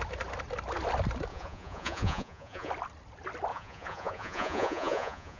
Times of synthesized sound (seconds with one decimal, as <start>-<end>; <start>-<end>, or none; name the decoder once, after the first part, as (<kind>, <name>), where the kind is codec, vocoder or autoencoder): 1.3-2.7 (vocoder, Vocos); 3.5-5.4